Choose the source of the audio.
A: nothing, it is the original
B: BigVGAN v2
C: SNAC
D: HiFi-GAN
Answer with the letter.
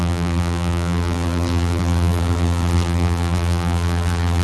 B